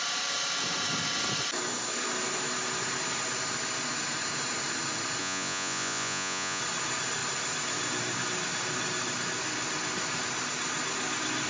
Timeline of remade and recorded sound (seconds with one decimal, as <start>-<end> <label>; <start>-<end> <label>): 0.0-5.2 recorded; 5.2-6.6 remade; 6.6-11.5 recorded